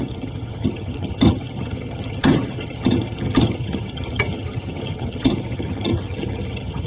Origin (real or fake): fake